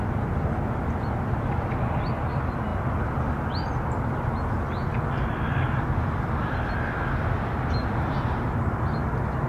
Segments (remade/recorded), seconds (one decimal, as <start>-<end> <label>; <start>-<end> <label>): 0.0-9.5 recorded